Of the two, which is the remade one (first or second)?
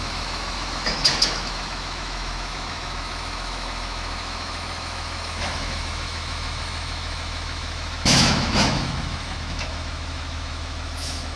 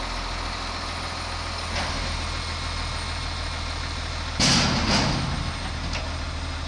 first